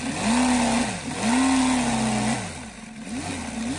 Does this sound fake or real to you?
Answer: real